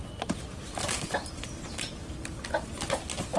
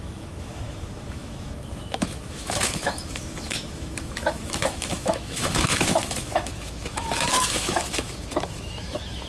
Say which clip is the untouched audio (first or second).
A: first